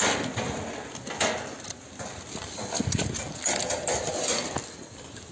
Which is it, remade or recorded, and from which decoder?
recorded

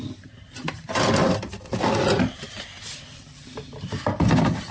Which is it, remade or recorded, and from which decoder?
recorded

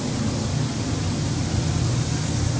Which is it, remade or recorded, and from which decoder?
recorded